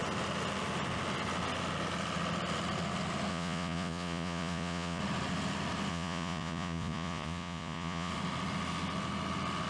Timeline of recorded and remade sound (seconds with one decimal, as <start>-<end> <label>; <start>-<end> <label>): 0.0-3.3 recorded; 3.3-5.0 remade; 5.0-5.9 recorded; 5.9-8.1 remade; 8.1-9.7 recorded